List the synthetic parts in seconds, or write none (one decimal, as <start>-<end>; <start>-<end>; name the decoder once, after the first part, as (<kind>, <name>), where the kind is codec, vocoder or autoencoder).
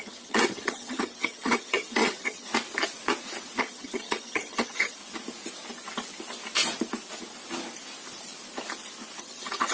0.0-2.5 (vocoder, HiFi-GAN); 3.6-5.0; 9.2-9.7